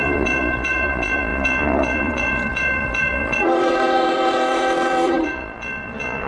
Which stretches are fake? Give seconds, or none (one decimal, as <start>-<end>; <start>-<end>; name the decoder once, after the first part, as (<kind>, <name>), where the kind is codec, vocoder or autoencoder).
0.0-6.3 (vocoder, Vocos)